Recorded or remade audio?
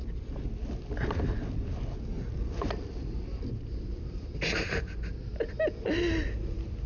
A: recorded